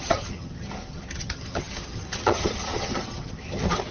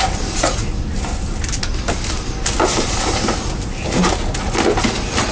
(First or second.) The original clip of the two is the second